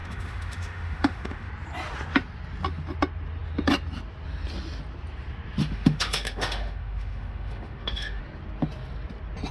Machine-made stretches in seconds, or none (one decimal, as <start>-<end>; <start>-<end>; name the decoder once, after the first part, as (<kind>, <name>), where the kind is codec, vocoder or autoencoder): 0.0-1.5 (autoencoder, DAC-VAE); 5.6-8.2